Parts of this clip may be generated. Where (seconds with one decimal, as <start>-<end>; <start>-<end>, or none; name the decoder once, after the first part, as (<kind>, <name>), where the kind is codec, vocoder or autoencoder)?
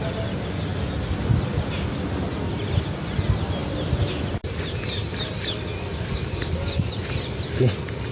none